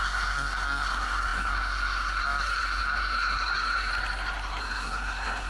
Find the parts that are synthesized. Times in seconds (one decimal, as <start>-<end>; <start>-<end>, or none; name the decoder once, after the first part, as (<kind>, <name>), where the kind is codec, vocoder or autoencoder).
0.0-3.9 (codec, SNAC); 4.6-5.5